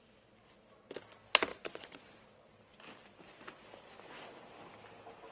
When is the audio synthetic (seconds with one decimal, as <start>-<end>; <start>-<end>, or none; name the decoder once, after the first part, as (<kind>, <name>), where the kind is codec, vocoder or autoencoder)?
1.5-2.1 (vocoder, Vocos)